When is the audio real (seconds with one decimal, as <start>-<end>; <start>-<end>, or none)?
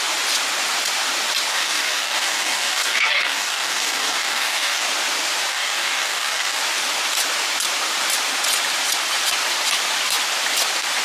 0.0-1.5; 4.8-5.5; 6.6-11.0